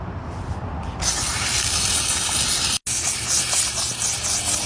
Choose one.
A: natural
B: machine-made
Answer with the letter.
A